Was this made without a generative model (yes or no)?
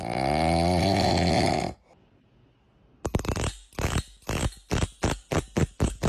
yes